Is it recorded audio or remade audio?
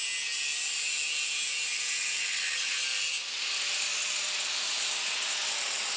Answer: recorded